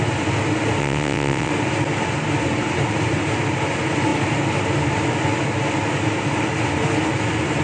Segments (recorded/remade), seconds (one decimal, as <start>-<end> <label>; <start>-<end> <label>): 0.0-0.8 recorded; 0.8-1.5 remade; 1.5-7.6 recorded

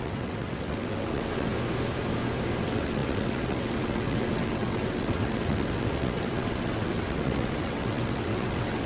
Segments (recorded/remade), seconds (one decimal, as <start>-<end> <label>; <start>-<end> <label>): 0.0-1.5 remade; 1.5-2.6 recorded; 2.6-8.9 remade

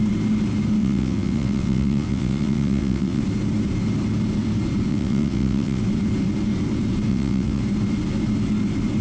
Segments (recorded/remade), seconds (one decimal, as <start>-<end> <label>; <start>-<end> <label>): 0.0-0.8 recorded; 0.8-3.2 remade; 3.2-4.9 recorded; 4.9-5.8 remade; 5.8-7.1 recorded; 7.1-7.6 remade; 7.6-9.0 recorded

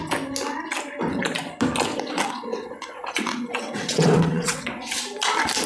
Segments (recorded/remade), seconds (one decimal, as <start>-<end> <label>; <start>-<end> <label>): 0.0-1.9 recorded; 1.9-5.0 remade; 5.0-5.7 recorded

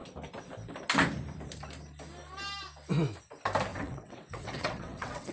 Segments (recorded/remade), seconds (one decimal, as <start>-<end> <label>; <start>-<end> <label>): 0.0-3.7 recorded; 3.7-5.3 remade

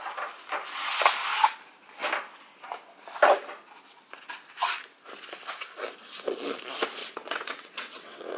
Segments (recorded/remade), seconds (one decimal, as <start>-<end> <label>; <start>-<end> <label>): 0.0-7.0 recorded; 7.0-8.4 remade

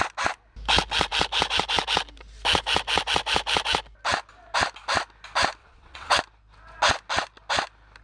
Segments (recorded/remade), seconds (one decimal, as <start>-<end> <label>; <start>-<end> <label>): 0.0-5.6 recorded; 5.6-6.2 remade; 6.2-8.0 recorded